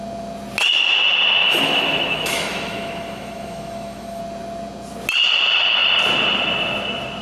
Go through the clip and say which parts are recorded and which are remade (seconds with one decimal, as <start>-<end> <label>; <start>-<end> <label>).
0.0-1.4 recorded; 1.4-4.2 remade; 4.2-7.2 recorded